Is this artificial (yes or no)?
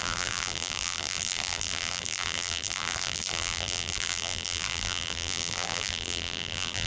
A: yes